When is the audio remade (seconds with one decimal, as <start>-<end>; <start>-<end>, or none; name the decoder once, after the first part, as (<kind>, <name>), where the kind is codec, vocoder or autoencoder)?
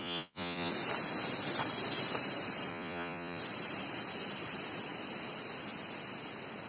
0.0-0.7 (vocoder, Vocos); 2.7-3.4